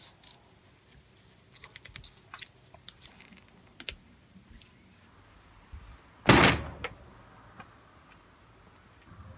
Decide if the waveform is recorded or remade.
recorded